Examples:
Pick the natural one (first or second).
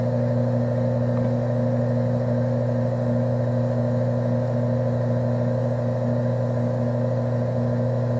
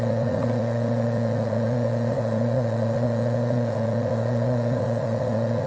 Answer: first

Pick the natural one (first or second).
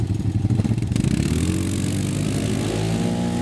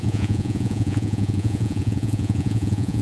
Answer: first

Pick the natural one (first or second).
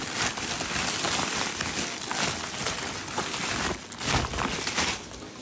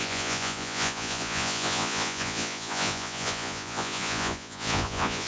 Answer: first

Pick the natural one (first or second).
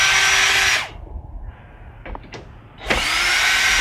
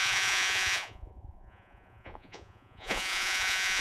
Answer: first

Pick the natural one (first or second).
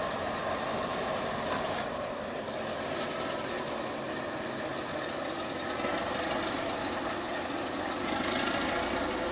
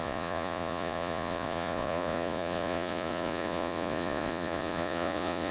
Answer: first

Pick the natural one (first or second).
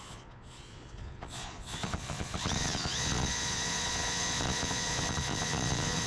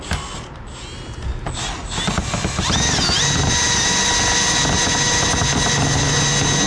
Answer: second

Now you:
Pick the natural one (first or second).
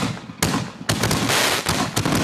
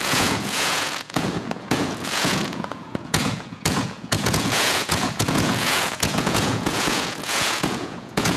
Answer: first